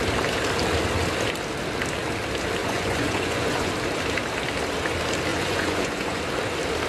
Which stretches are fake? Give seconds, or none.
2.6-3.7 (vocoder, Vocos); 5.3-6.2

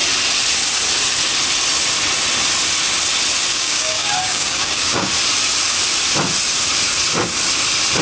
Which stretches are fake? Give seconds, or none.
3.5-5.1 (codec, DAC)

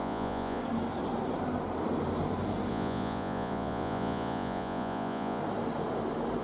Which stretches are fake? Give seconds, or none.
0.0-0.6 (vocoder, Vocos); 2.7-5.4

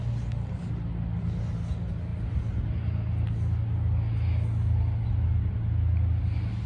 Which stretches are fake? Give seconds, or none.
none